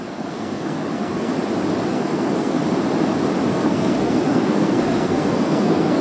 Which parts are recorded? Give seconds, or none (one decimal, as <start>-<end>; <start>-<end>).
1.3-1.9; 2.6-3.5